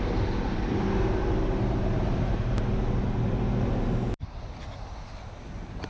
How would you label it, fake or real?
real